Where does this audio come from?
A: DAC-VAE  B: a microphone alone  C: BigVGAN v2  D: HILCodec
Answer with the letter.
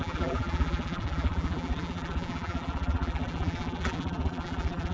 C